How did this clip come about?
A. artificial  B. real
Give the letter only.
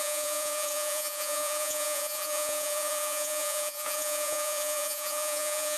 A